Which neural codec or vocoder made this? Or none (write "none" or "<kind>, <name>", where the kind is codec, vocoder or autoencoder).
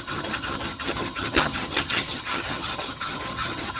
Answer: vocoder, HiFi-GAN